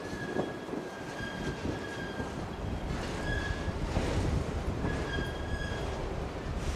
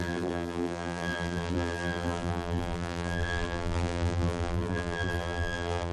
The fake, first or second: second